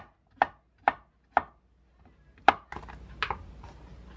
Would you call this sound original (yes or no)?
yes